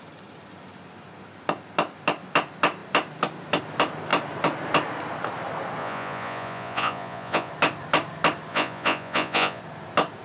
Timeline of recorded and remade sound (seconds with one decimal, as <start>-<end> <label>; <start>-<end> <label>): 0.0-5.8 recorded; 5.8-7.5 remade; 7.5-8.5 recorded; 8.5-9.6 remade; 9.6-10.2 recorded